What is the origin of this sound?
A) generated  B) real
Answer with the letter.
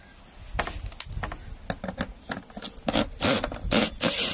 B